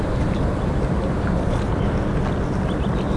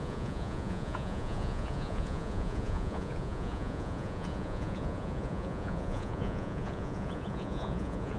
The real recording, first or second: first